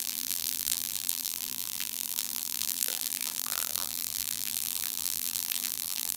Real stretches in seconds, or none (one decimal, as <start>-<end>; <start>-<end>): none